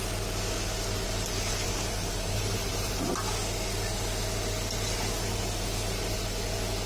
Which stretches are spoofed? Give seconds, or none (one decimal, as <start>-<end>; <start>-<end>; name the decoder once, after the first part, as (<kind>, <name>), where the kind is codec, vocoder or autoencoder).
1.6-3.1 (vocoder, BigVGAN v2)